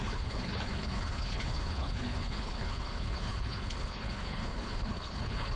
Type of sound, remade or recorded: remade